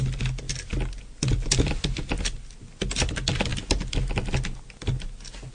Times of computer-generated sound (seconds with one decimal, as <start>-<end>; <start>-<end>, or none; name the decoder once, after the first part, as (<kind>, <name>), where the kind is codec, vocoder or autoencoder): none